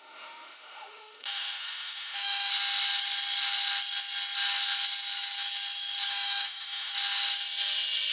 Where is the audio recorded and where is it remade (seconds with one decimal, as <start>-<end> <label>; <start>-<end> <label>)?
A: 0.0-2.5 remade; 2.5-6.1 recorded; 6.1-6.9 remade; 6.9-8.1 recorded